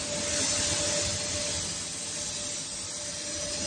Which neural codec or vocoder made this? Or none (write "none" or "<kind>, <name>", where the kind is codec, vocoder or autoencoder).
none